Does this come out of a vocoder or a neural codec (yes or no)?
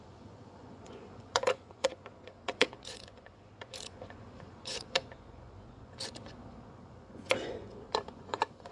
yes